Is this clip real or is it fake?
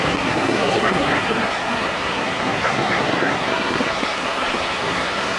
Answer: fake